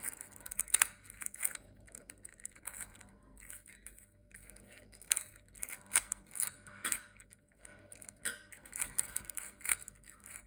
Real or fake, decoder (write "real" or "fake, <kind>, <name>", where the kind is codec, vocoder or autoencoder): fake, codec, SNAC